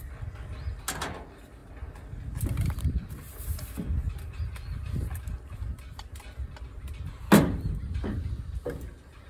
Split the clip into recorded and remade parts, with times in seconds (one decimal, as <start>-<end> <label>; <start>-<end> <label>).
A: 0.0-9.3 recorded